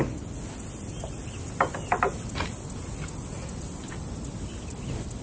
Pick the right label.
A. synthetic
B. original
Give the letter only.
B